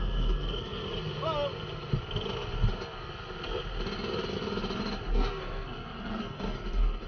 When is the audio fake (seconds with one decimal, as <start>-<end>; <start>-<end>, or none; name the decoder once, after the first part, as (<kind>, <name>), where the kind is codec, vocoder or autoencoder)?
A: 0.0-0.8 (codec, SNAC); 5.1-7.1